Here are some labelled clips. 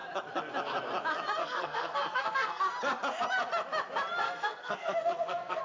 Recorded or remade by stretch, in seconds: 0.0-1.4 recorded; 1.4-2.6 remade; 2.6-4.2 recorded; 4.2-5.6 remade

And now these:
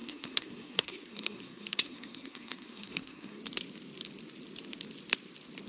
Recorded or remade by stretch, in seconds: 0.0-3.4 remade; 3.4-5.7 recorded

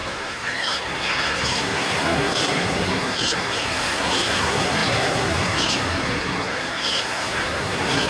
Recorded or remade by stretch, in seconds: 0.0-8.1 remade

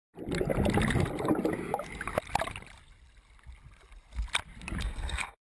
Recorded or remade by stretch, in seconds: 0.0-4.8 recorded; 4.8-5.6 remade

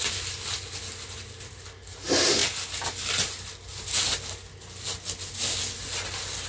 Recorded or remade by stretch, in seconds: 0.0-6.5 recorded

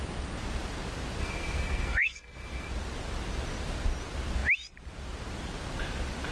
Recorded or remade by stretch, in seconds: 0.0-1.2 recorded; 1.2-2.7 remade; 2.7-6.3 recorded